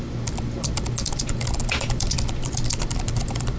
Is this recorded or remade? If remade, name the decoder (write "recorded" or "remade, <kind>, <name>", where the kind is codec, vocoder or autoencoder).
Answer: recorded